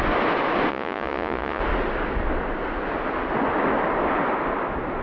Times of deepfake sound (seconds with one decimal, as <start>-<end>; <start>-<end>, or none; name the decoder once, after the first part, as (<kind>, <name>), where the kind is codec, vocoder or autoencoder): 0.7-1.6 (vocoder, Vocos)